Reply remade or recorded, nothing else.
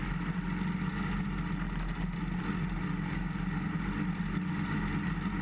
recorded